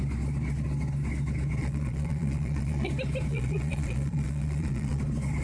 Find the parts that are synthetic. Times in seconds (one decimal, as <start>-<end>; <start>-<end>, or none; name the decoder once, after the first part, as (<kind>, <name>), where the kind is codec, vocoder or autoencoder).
1.6-2.9 (vocoder, Vocos); 3.3-5.0

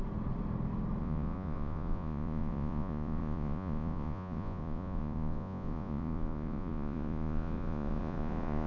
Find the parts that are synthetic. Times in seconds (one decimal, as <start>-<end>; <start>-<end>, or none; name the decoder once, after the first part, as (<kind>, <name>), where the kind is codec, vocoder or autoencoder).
1.0-8.7 (vocoder, Vocos)

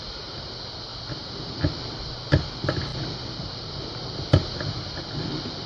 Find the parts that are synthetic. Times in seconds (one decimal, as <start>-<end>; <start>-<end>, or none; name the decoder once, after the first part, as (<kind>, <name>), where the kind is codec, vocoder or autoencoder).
none

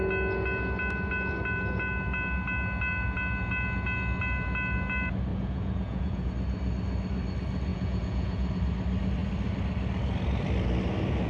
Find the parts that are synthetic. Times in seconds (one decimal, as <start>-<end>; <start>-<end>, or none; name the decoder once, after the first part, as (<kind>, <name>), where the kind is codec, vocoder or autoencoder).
5.3-6.3 (vocoder, Vocos); 7.7-8.5